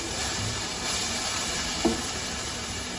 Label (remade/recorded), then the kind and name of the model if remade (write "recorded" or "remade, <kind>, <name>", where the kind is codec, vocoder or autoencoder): remade, vocoder, BigVGAN v2